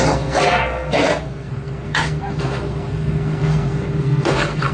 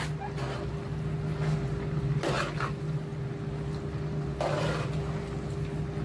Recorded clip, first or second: second